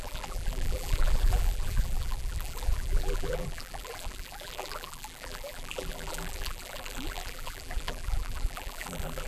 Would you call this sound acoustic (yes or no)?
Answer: no